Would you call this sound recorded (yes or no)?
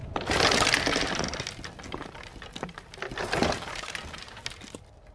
yes